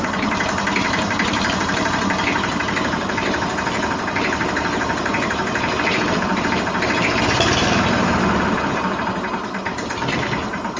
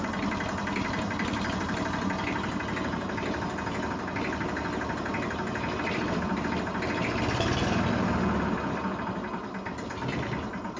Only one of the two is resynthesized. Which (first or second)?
first